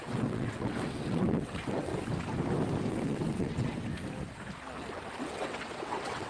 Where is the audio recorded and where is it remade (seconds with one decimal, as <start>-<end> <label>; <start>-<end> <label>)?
0.0-1.9 remade; 1.9-2.9 recorded; 2.9-3.9 remade; 3.9-5.2 recorded; 5.2-6.3 remade